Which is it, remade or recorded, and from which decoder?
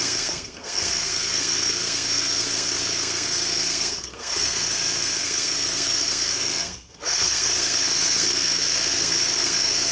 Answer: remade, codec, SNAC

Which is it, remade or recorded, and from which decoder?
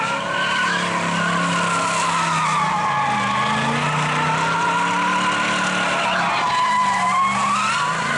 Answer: recorded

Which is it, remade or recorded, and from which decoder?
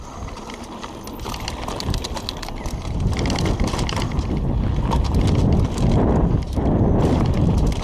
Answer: recorded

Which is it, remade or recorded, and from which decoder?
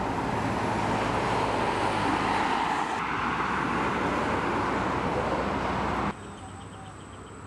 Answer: recorded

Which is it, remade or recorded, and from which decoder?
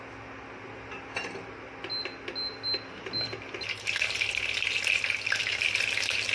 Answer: recorded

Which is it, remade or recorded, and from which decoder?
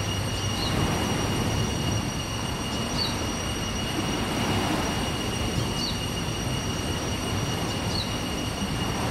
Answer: recorded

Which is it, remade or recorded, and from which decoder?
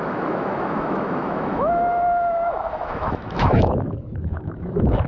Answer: remade, autoencoder, DAC-VAE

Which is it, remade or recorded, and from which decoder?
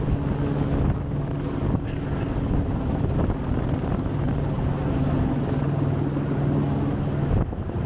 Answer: recorded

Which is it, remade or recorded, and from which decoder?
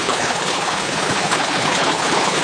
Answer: remade, codec, HILCodec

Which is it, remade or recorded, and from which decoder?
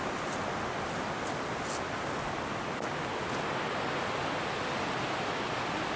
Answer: recorded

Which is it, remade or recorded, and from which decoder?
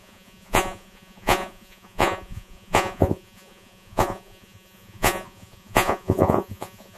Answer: remade, vocoder, Vocos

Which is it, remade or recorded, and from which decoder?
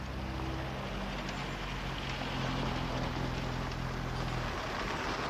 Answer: recorded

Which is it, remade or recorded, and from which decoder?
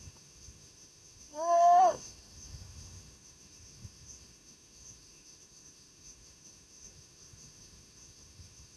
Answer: remade, autoencoder, DAC-VAE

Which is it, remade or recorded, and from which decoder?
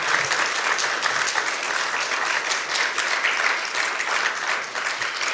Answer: recorded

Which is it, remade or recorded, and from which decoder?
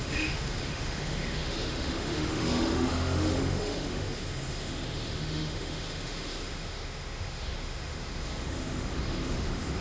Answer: remade, autoencoder, DAC-VAE